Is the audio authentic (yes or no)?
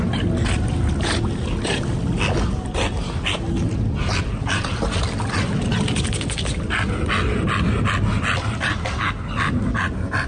yes